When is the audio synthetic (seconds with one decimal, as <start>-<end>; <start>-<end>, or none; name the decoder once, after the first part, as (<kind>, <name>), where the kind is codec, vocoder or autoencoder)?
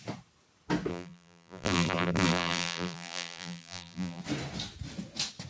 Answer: 0.9-4.2 (vocoder, BigVGAN v2)